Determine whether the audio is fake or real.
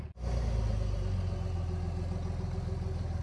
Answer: real